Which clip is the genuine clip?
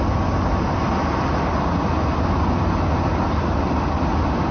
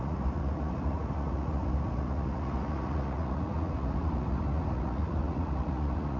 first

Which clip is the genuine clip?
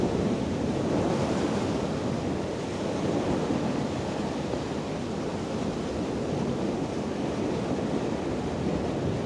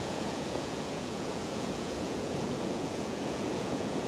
first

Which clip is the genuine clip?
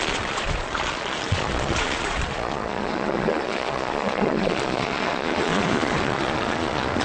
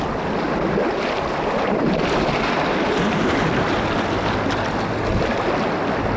second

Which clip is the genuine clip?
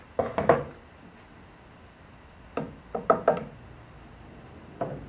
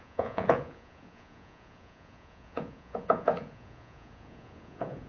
first